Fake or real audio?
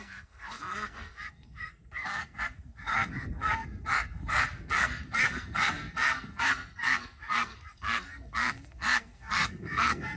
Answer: fake